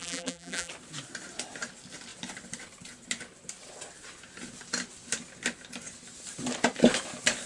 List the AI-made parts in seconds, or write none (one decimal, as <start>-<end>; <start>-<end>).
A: 0.0-0.7